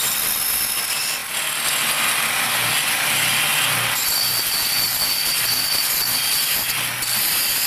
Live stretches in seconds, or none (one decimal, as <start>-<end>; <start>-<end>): 0.0-7.7